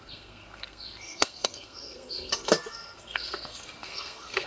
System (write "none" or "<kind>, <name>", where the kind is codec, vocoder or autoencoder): codec, SNAC